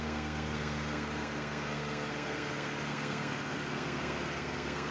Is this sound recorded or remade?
remade